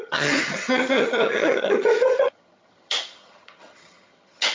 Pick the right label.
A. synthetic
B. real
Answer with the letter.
A